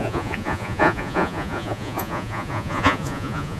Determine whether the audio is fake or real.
fake